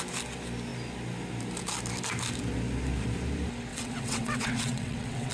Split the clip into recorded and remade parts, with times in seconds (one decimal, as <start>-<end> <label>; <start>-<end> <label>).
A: 0.0-3.7 recorded; 3.7-5.3 remade